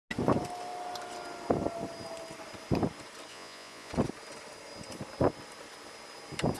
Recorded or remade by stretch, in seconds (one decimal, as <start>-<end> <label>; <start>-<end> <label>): 0.0-3.3 recorded; 3.3-3.9 remade; 3.9-6.6 recorded